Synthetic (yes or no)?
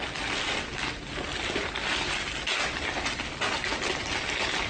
no